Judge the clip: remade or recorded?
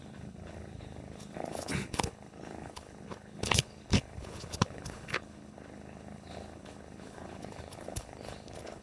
remade